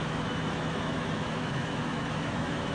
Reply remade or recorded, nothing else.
remade